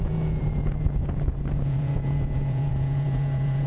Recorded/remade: remade